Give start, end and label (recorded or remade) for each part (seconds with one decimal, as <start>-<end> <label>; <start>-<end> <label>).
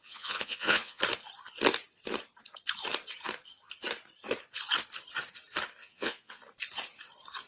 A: 0.0-1.0 remade; 1.0-5.8 recorded; 5.8-6.4 remade; 6.4-7.5 recorded